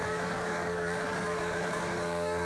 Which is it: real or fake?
fake